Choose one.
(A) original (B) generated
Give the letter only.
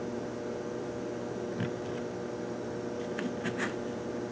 A